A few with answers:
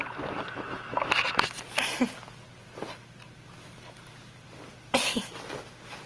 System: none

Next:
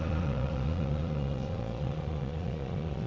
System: vocoder, Vocos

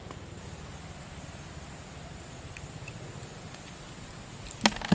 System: none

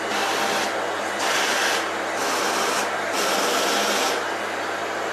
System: none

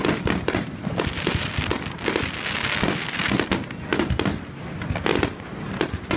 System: none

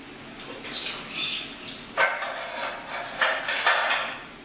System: none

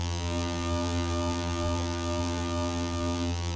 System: vocoder, BigVGAN v2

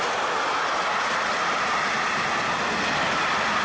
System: none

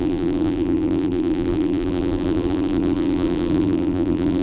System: vocoder, BigVGAN v2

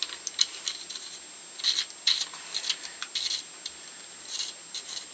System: none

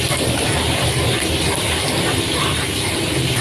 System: none